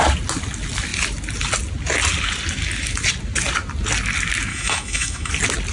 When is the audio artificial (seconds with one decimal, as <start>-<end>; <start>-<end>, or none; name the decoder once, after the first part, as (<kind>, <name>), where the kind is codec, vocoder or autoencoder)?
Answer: 4.5-5.3 (autoencoder, DAC-VAE)